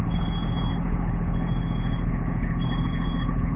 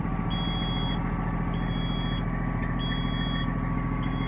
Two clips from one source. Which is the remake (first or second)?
first